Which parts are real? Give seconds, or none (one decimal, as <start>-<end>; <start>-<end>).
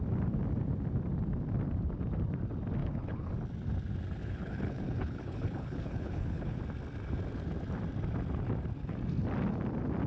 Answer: 0.0-2.8; 3.3-4.2; 6.6-10.1